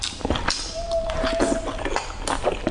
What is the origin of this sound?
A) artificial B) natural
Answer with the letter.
B